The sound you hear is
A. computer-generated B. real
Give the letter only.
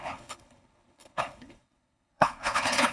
A